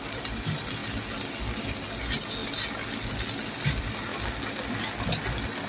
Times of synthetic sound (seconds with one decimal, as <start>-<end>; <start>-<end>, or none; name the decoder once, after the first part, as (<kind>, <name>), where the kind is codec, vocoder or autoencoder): none